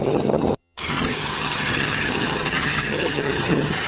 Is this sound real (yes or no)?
no